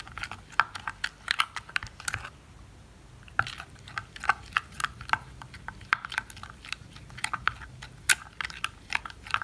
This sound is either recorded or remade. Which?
recorded